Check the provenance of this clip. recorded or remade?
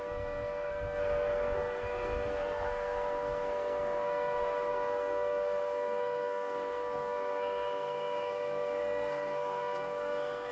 remade